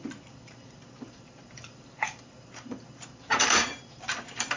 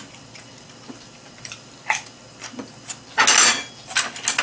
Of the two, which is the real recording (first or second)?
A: second